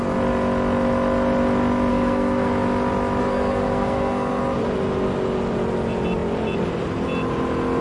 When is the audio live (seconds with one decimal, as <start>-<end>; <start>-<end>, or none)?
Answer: 0.0-1.9; 2.5-3.2; 4.4-7.8